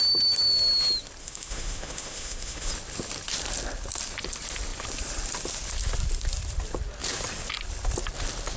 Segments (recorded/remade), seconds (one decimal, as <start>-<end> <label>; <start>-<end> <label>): 0.0-1.2 recorded; 1.2-2.7 remade; 2.7-8.6 recorded